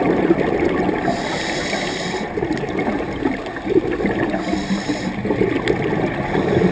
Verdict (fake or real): real